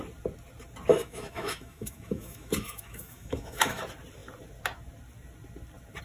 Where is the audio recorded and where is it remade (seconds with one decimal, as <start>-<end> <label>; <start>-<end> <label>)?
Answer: 0.0-0.9 recorded; 0.9-3.8 remade; 3.8-6.0 recorded